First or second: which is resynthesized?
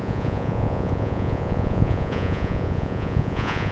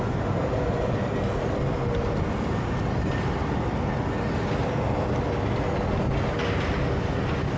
first